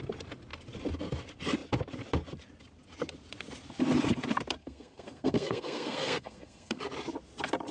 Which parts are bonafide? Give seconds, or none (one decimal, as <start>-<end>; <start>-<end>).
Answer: 0.0-4.6; 6.8-7.7